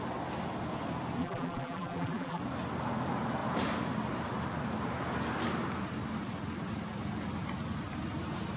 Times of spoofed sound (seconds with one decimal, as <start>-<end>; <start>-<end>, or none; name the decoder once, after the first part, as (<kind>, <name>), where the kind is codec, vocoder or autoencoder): 1.2-2.4 (vocoder, BigVGAN v2)